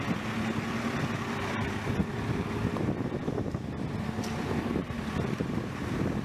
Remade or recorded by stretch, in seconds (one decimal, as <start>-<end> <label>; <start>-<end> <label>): 0.0-6.2 recorded